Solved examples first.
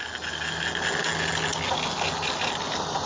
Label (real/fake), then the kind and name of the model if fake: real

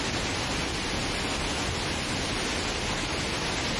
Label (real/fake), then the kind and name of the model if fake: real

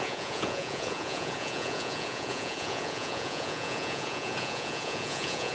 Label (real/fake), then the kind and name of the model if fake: fake, vocoder, Vocos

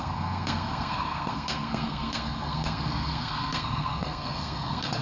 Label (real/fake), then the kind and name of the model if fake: fake, codec, SNAC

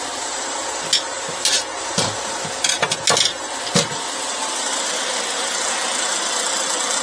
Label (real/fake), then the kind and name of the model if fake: real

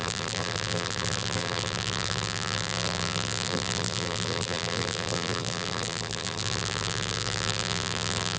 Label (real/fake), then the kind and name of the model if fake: fake, vocoder, BigVGAN v2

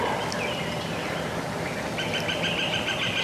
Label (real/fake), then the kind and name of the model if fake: real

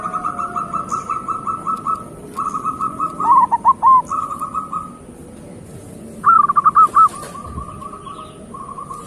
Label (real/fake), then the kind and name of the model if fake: real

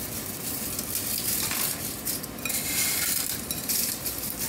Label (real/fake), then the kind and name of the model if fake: real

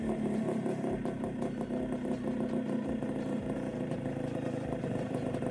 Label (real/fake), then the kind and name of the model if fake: fake, vocoder, BigVGAN v2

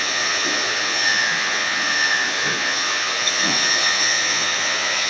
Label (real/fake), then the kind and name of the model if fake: fake, vocoder, Vocos